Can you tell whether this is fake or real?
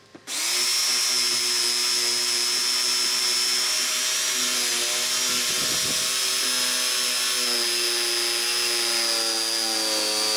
real